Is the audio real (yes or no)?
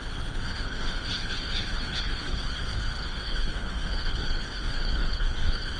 no